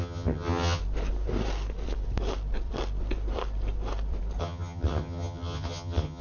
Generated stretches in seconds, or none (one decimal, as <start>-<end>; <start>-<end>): 0.0-0.8; 4.4-6.2